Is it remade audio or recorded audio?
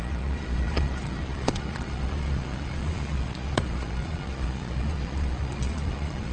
remade